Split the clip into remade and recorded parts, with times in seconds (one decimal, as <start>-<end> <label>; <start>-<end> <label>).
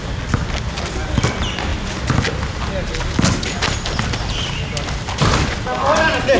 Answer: 0.0-6.4 recorded